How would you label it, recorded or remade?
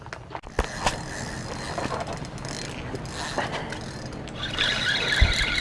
recorded